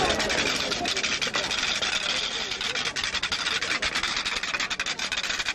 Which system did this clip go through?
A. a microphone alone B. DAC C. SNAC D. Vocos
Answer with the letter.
A